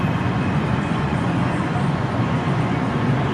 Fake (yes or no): yes